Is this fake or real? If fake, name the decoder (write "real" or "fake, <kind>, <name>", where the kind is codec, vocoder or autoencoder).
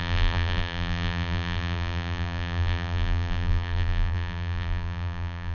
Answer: fake, vocoder, BigVGAN v2